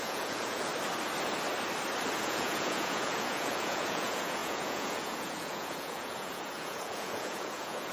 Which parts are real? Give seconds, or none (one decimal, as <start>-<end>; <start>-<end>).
0.7-2.2